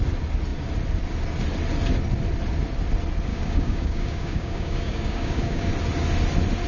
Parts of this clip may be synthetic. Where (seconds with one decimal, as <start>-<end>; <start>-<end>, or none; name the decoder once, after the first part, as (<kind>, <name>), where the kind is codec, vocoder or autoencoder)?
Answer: 3.3-5.7 (codec, DAC)